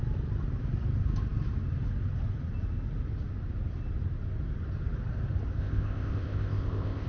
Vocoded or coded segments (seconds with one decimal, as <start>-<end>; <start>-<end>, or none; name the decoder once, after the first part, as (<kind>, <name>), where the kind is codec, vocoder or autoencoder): 5.6-7.1 (codec, ZipCodec)